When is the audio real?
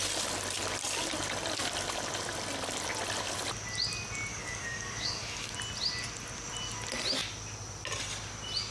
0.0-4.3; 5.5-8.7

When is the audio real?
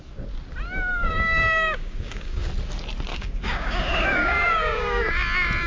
0.0-0.9; 2.5-3.1; 5.1-5.7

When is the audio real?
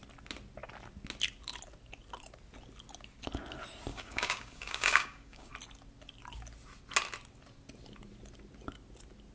0.0-3.9; 5.5-9.3